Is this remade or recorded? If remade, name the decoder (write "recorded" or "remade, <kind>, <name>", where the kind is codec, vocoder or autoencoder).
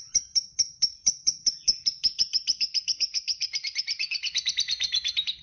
remade, vocoder, BigVGAN v2